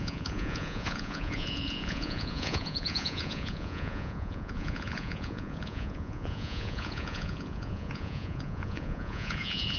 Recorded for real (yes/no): no